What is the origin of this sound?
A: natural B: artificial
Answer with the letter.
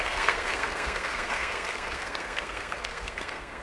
B